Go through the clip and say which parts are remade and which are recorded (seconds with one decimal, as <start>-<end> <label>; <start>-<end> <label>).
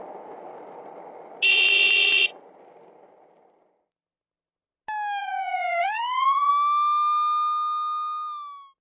0.0-1.5 recorded; 1.5-2.4 remade; 2.4-5.2 recorded; 5.2-6.5 remade; 6.5-8.8 recorded